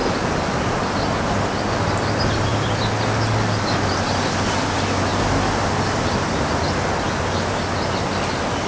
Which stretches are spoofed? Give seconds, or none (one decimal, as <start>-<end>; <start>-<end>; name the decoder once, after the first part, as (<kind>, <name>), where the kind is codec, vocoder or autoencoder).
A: none